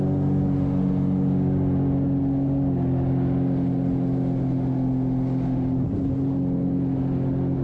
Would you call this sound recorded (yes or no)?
yes